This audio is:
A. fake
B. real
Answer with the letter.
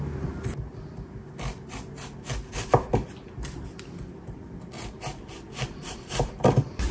B